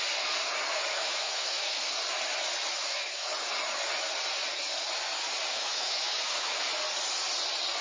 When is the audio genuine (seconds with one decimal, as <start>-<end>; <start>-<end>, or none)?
0.0-0.9; 1.9-2.8; 3.3-5.5; 6.6-7.8